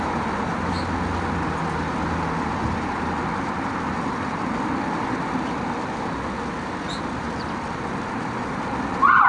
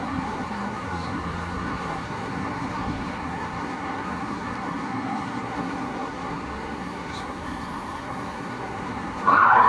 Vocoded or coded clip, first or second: second